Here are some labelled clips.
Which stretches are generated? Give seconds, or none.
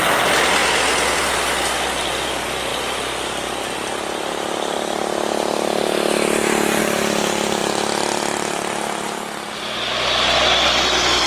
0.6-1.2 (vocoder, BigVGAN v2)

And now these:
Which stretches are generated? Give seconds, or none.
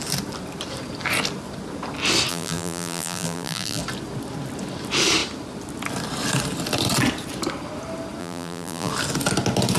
2.3-3.8 (vocoder, BigVGAN v2); 8.2-8.9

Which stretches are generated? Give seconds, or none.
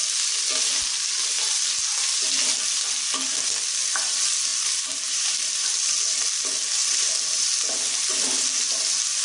4.5-5.5 (vocoder, BigVGAN v2)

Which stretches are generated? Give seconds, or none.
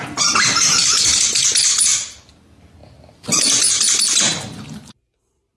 none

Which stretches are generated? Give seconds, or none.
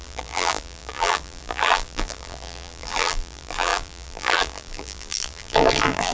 0.0-6.1 (vocoder, BigVGAN v2)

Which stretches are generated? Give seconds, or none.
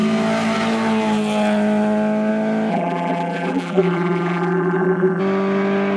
2.7-5.2 (vocoder, BigVGAN v2)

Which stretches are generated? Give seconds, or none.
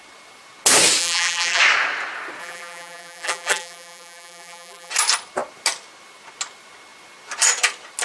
1.0-1.6 (vocoder, BigVGAN v2); 2.4-4.9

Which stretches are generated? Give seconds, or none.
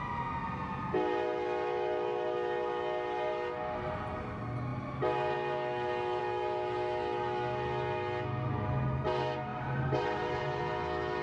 9.5-10.6 (vocoder, BigVGAN v2)